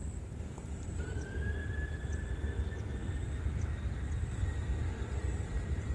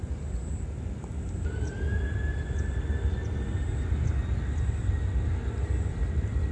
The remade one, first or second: first